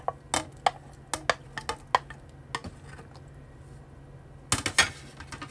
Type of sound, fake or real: real